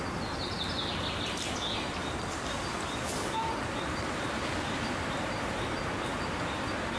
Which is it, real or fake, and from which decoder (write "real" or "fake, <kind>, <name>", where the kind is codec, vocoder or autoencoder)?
real